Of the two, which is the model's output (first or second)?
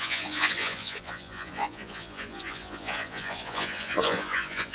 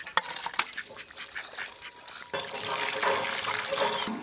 first